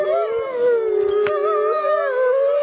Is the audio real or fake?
real